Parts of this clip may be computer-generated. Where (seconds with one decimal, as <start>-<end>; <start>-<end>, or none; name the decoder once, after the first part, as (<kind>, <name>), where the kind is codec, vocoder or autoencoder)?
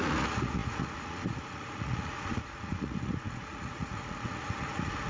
0.0-5.1 (vocoder, Vocos)